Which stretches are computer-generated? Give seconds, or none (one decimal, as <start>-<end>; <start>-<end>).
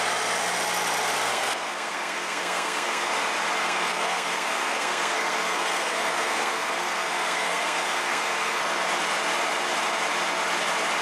1.3-3.1; 3.6-8.6